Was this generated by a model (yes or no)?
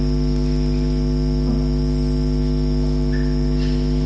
no